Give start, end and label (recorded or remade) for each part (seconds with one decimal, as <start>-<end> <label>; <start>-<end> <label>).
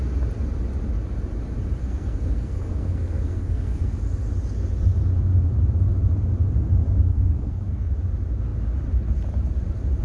0.0-1.8 recorded; 1.8-4.0 remade; 4.0-7.1 recorded; 7.1-7.9 remade; 7.9-10.0 recorded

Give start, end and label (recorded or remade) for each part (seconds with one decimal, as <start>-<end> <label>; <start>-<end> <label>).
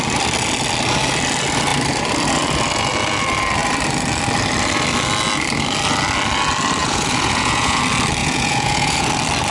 0.0-6.8 recorded; 6.8-7.8 remade; 7.8-8.2 recorded; 8.2-9.1 remade; 9.1-9.5 recorded